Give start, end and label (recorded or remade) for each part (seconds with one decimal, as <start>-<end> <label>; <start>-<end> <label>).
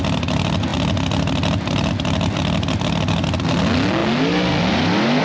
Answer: 0.0-5.2 recorded